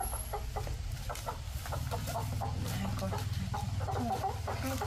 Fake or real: real